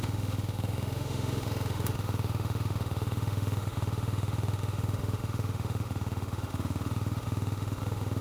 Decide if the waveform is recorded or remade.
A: remade